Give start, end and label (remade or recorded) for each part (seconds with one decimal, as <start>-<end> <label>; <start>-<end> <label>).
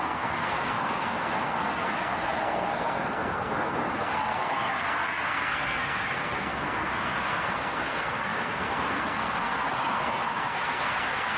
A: 0.0-11.4 remade